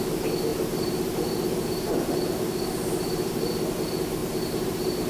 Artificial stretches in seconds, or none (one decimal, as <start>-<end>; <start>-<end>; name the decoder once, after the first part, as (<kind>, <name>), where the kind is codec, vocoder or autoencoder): 0.5-3.3 (vocoder, BigVGAN v2); 4.2-5.1